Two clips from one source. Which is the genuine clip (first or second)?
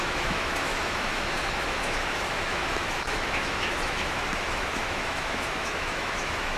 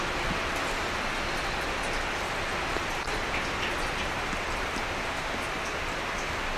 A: second